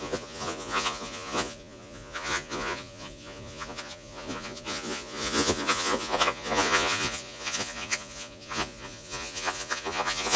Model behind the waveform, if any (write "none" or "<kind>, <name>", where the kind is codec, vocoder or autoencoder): vocoder, Vocos